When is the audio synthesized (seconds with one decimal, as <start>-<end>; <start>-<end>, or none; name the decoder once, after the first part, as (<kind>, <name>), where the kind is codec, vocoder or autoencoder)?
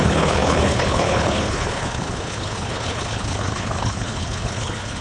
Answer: 0.0-5.0 (codec, HILCodec)